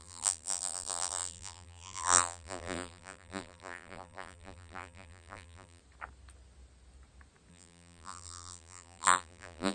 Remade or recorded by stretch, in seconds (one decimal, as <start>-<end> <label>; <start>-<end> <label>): 0.0-5.8 remade; 5.8-7.5 recorded; 7.5-9.7 remade